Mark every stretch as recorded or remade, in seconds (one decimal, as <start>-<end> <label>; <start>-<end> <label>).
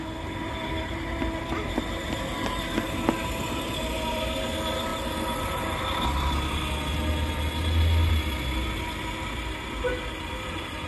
0.0-10.9 recorded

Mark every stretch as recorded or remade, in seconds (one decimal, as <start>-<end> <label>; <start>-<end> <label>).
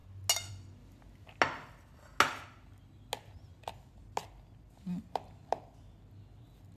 0.0-6.8 recorded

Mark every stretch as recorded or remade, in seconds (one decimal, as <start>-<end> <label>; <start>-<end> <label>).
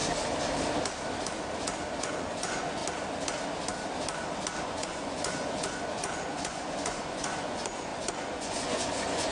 0.0-2.0 recorded; 2.0-2.8 remade; 2.8-4.6 recorded; 4.6-9.3 remade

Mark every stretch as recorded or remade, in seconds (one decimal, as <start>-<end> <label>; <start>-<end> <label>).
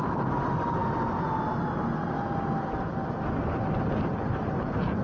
0.0-5.0 recorded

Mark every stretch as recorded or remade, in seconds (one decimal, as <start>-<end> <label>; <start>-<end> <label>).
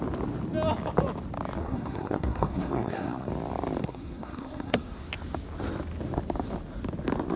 0.0-1.6 recorded; 1.6-3.3 remade; 3.3-3.8 recorded; 3.8-5.1 remade; 5.1-7.4 recorded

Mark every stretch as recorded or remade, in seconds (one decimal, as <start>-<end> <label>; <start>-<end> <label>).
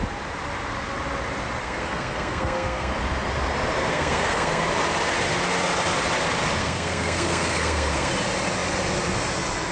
0.0-1.6 recorded; 1.6-2.9 remade; 2.9-3.9 recorded; 3.9-4.6 remade; 4.6-6.6 recorded; 6.6-8.1 remade; 8.1-9.7 recorded